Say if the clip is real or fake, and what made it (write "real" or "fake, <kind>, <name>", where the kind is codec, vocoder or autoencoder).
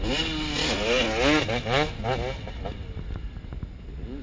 real